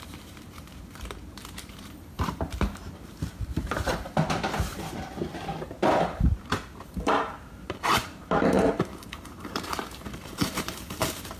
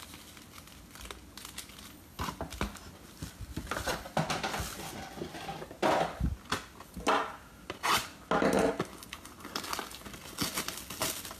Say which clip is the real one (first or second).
second